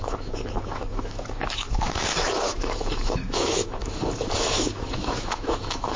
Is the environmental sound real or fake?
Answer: fake